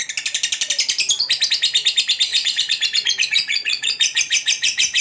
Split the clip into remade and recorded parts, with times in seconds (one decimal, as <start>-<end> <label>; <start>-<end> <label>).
0.0-2.3 recorded; 2.3-5.0 remade